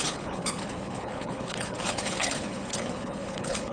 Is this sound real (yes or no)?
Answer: no